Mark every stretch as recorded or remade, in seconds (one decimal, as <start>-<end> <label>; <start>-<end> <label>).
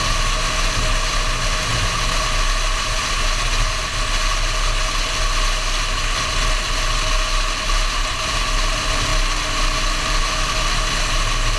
0.0-11.6 recorded